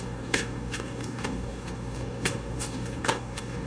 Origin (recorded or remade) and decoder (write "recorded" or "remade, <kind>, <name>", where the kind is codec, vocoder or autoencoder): remade, codec, DAC